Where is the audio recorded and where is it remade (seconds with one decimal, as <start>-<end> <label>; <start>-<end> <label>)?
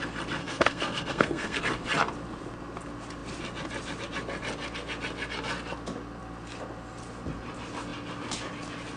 0.0-0.4 recorded; 0.4-1.6 remade; 1.6-9.0 recorded